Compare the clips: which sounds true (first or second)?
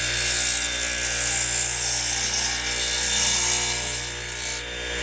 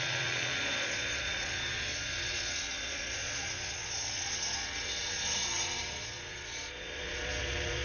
first